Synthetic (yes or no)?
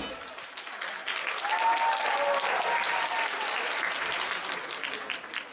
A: no